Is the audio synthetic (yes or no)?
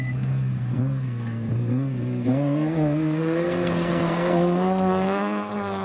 yes